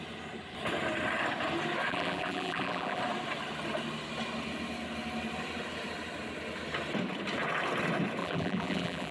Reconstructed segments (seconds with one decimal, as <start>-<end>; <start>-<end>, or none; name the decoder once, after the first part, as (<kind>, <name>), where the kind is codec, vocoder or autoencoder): 1.9-3.0 (vocoder, BigVGAN v2); 8.2-9.1